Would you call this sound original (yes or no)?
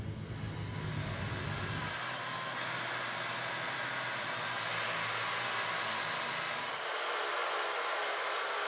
yes